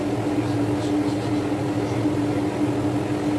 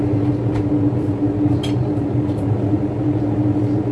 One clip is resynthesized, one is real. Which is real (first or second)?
first